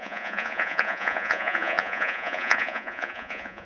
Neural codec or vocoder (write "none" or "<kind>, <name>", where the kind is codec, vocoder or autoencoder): vocoder, Vocos